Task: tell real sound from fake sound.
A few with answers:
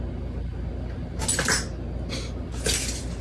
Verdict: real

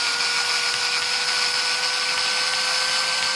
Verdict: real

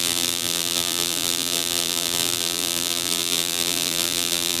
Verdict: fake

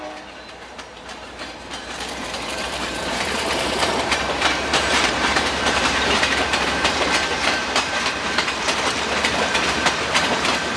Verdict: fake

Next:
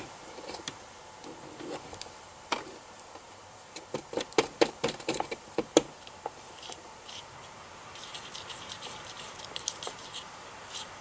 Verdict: fake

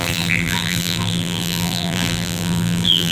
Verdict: fake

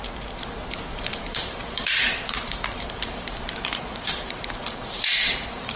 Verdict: fake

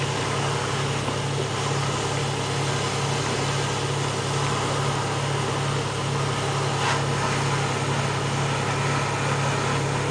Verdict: real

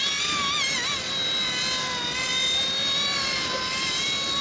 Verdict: real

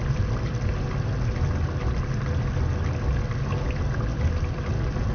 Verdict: real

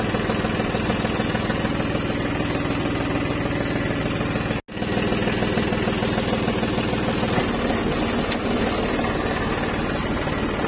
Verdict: real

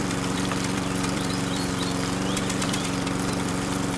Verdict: fake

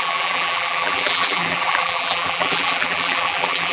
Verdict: fake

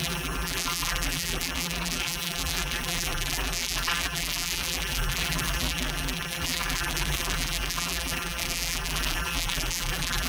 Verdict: fake